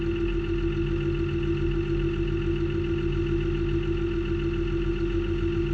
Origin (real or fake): real